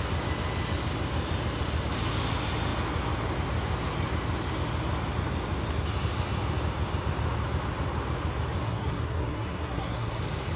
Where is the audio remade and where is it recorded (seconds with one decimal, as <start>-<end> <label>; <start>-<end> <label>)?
0.0-8.6 recorded; 8.6-10.2 remade; 10.2-10.6 recorded